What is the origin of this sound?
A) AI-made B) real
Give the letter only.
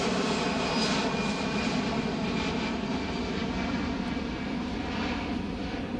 B